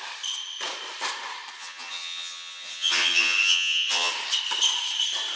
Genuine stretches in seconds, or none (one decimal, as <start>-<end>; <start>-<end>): 0.0-1.6; 4.1-5.4